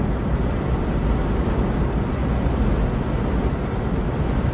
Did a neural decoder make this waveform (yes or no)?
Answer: no